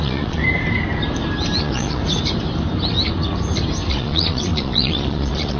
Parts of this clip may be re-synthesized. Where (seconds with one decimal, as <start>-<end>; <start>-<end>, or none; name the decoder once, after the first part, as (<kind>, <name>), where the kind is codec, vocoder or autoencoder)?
0.0-0.4 (vocoder, Vocos); 1.6-2.0; 3.9-5.6